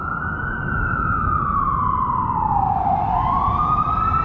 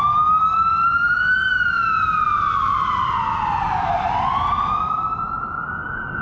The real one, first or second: second